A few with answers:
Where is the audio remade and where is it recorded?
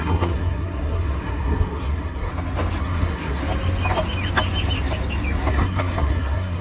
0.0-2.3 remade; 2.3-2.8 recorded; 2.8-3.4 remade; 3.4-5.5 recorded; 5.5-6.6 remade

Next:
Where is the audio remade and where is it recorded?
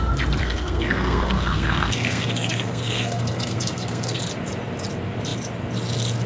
0.0-0.4 recorded; 0.4-4.2 remade; 4.2-6.3 recorded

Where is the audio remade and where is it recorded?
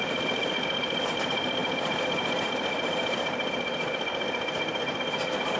0.0-5.6 recorded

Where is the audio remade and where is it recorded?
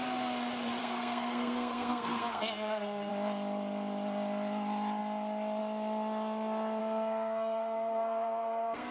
0.0-0.8 recorded; 0.8-3.1 remade; 3.1-6.8 recorded; 6.8-8.9 remade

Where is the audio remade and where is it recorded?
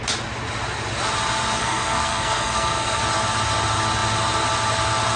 0.0-1.6 recorded; 1.6-3.0 remade; 3.0-5.2 recorded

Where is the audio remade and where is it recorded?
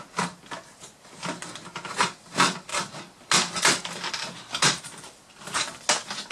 0.0-6.3 recorded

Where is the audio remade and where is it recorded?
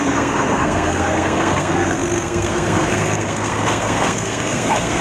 0.0-5.0 remade